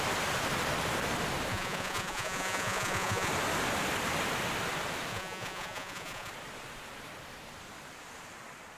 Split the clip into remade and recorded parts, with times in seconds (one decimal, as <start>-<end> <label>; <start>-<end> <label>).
0.0-1.5 recorded; 1.5-3.3 remade; 3.3-5.1 recorded; 5.1-6.3 remade; 6.3-8.8 recorded